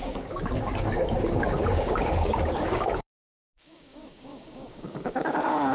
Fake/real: fake